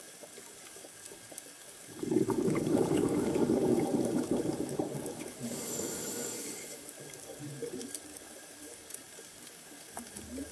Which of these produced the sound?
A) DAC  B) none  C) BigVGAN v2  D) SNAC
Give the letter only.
A